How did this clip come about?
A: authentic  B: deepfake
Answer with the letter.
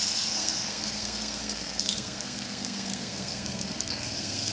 B